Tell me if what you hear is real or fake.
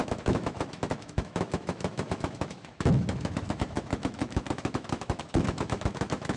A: fake